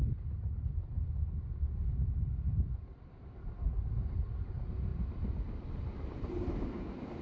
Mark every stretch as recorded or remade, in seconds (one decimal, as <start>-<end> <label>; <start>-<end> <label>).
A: 0.0-7.2 recorded